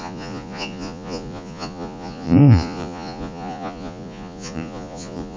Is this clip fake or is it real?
fake